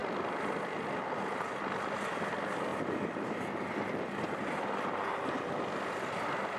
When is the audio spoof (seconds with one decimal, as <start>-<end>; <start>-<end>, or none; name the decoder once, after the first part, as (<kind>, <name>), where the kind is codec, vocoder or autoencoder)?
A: none